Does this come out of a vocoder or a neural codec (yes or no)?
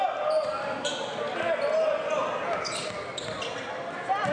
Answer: no